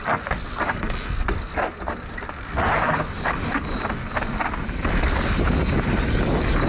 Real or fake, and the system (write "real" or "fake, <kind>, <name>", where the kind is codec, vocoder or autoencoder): real